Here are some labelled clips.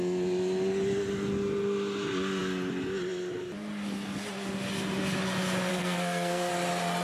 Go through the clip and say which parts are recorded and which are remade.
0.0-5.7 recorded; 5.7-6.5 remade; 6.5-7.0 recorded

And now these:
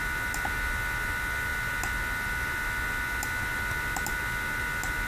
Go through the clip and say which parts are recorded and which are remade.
0.0-5.1 recorded

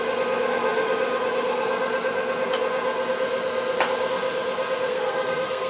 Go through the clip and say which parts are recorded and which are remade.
0.0-4.9 recorded; 4.9-5.7 remade